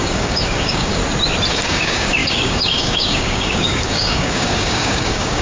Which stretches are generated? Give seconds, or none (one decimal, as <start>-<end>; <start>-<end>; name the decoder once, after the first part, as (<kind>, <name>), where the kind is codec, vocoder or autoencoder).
0.0-1.0 (codec, DAC); 1.5-5.4